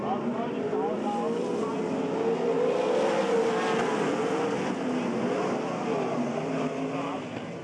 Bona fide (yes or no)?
yes